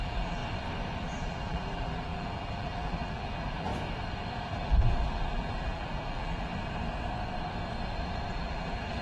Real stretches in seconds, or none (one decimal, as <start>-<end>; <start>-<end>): 0.4-1.0; 3.7-4.5; 6.5-8.3